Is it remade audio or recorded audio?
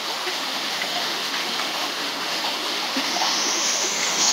remade